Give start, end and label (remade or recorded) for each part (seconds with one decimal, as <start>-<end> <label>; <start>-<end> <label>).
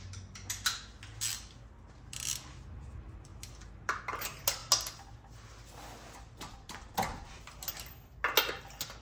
0.0-9.0 recorded